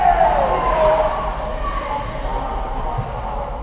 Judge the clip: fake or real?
real